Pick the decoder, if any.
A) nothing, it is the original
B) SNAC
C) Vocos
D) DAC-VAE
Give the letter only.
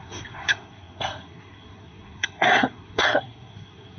B